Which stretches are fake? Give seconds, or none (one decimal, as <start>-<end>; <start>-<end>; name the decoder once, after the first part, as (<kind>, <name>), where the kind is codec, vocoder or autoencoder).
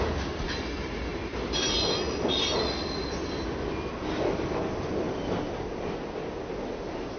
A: 1.1-1.7 (vocoder, BigVGAN v2)